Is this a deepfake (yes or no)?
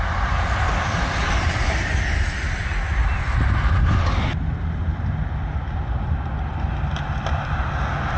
no